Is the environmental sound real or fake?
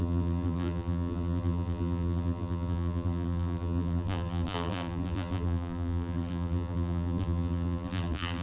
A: fake